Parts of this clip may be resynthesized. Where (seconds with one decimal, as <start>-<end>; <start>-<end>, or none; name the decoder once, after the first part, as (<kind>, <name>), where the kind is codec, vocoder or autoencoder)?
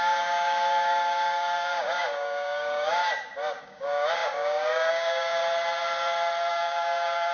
0.0-3.0 (codec, DAC); 3.6-5.4; 6.5-7.3